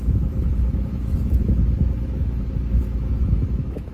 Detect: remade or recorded remade